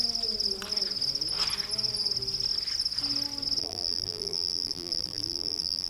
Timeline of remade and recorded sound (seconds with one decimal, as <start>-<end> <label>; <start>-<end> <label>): 0.0-3.6 recorded; 3.6-5.9 remade